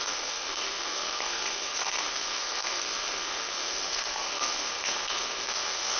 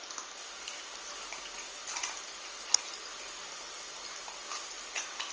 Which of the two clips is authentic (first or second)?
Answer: second